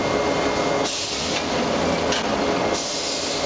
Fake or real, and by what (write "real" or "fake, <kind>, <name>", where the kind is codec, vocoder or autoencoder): real